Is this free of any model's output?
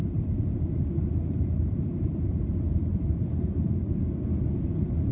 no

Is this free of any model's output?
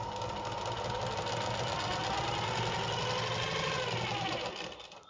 yes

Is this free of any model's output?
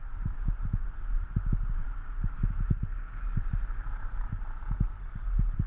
yes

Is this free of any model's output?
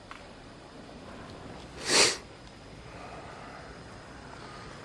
yes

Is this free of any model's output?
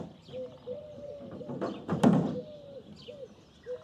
yes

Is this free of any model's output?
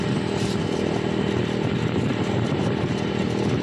yes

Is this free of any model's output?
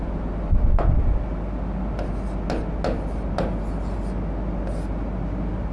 yes